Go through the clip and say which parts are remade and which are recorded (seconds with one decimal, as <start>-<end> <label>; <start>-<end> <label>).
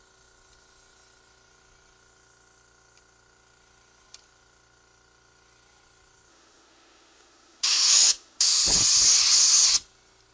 0.0-6.3 recorded; 6.3-8.6 remade; 8.6-10.3 recorded